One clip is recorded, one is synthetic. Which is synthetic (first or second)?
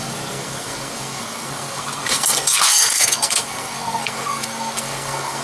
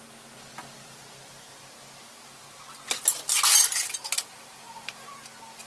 first